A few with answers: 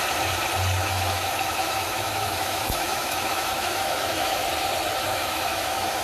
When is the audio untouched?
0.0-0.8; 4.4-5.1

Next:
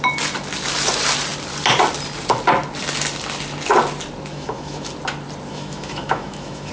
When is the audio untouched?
0.0-4.3; 4.9-5.5

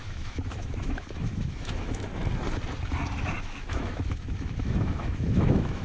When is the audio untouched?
2.2-3.4

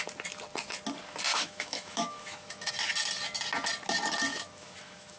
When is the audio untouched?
0.0-1.3; 2.7-4.3

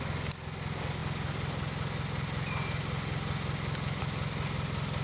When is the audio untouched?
0.0-5.0

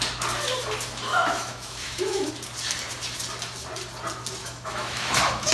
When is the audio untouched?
0.0-1.1; 2.3-4.4

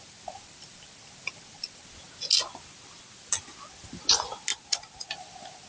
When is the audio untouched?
0.0-5.7